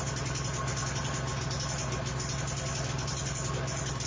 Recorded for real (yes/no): yes